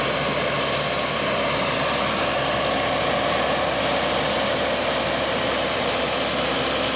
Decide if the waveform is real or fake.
real